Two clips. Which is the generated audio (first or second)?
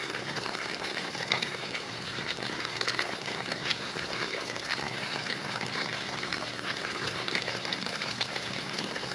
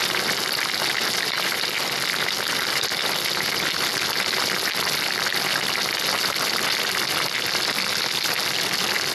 first